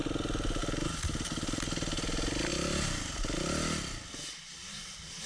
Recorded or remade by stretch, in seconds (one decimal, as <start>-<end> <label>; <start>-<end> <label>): 0.0-5.3 recorded